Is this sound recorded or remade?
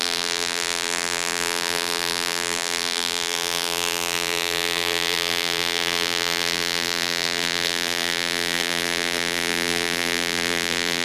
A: remade